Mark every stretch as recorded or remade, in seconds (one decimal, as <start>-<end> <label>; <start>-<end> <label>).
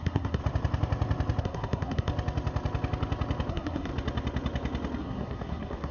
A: 0.0-0.4 remade; 0.4-1.4 recorded; 1.4-2.1 remade; 2.1-3.5 recorded; 3.5-3.9 remade; 3.9-5.0 recorded; 5.0-5.9 remade